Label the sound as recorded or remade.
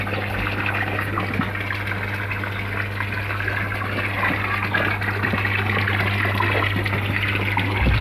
recorded